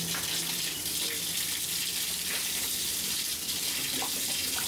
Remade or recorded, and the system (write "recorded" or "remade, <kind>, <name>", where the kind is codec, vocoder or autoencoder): remade, vocoder, BigVGAN v2